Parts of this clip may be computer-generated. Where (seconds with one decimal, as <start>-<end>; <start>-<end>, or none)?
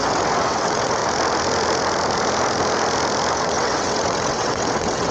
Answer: 0.0-1.0; 3.3-5.1